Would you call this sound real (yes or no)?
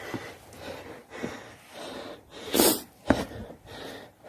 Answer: yes